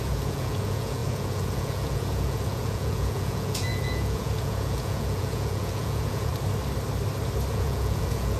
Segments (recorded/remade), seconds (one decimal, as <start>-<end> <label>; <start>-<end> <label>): 0.0-6.3 remade; 6.3-7.5 recorded; 7.5-8.4 remade